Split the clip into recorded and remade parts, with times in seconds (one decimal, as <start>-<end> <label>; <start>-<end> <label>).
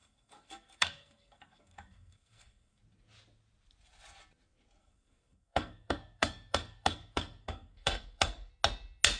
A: 0.0-2.8 remade; 2.8-4.8 recorded; 4.8-8.5 remade; 8.5-9.2 recorded